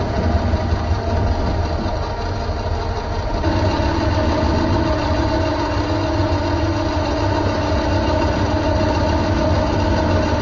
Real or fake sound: real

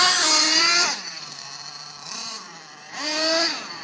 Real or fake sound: fake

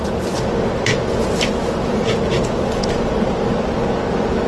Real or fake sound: real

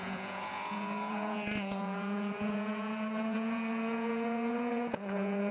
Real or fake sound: fake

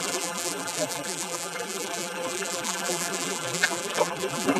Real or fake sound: fake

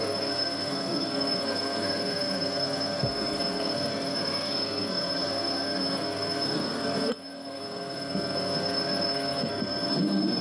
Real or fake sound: fake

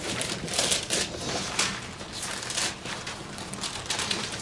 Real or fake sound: real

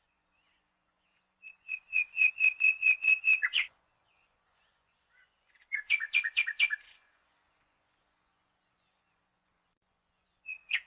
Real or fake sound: fake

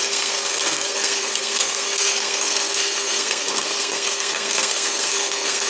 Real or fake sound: fake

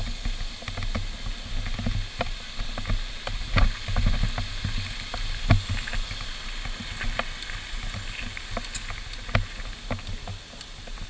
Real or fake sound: real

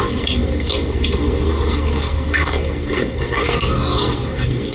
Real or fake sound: fake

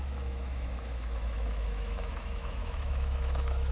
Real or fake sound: fake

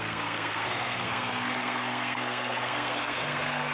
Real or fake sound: fake